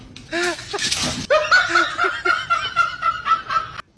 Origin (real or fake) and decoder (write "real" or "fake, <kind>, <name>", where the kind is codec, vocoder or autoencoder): real